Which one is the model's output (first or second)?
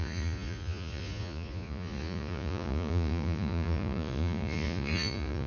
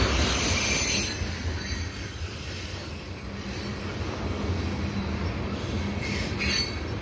first